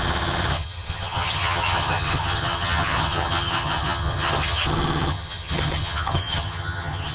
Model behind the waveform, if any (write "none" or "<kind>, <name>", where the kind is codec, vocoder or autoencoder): vocoder, HiFi-GAN